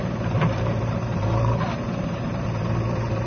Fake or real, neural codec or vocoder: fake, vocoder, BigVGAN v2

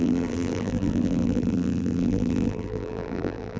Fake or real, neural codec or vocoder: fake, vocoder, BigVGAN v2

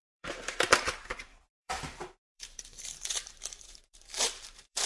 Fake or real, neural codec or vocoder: fake, vocoder, BigVGAN v2